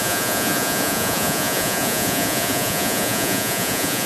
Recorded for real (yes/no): no